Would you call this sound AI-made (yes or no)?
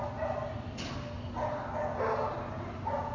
no